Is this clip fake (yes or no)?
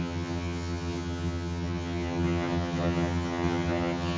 yes